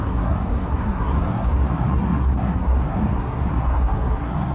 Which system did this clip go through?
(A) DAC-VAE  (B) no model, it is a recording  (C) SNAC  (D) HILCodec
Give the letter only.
C